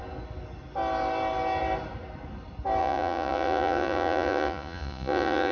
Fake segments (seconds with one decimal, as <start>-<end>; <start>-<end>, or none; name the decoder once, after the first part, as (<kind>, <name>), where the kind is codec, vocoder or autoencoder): 2.8-5.5 (vocoder, Vocos)